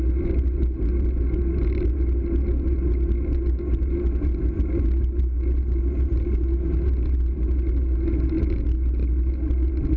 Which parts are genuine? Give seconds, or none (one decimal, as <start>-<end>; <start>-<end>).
0.0-10.0